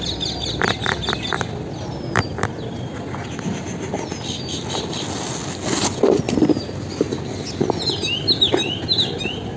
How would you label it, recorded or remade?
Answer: recorded